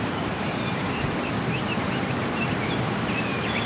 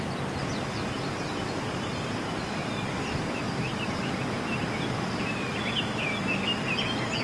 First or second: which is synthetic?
first